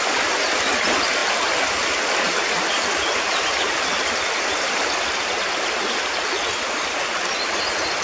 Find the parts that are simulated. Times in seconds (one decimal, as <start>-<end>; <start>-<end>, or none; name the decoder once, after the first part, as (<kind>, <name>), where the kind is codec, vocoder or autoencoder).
none